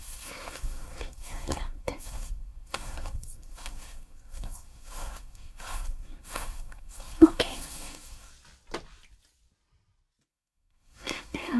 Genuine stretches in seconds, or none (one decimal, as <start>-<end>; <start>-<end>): 8.3-10.3